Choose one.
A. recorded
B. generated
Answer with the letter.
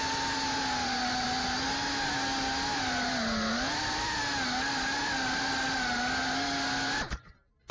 A